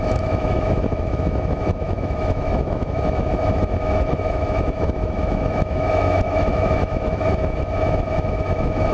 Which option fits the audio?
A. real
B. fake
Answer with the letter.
B